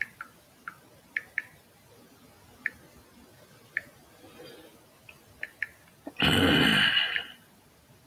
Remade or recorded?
recorded